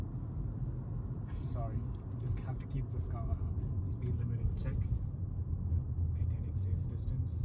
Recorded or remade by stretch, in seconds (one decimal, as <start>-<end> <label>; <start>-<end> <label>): 0.0-7.4 recorded

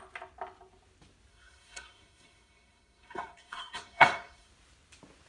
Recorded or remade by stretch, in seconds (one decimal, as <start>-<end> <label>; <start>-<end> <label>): 0.0-1.3 recorded; 1.3-4.5 remade; 4.5-5.3 recorded

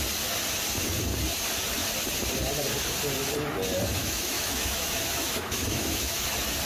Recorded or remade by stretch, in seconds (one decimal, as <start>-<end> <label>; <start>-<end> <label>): 0.0-4.0 recorded; 4.0-6.3 remade; 6.3-6.7 recorded

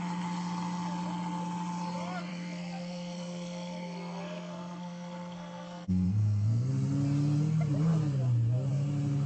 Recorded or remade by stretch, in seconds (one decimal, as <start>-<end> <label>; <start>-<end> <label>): 0.0-2.3 recorded; 2.3-6.7 remade; 6.7-9.3 recorded

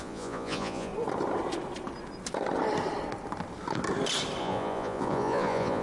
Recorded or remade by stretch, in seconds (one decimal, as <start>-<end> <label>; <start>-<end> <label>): 0.0-0.9 remade; 0.9-4.4 recorded; 4.4-5.8 remade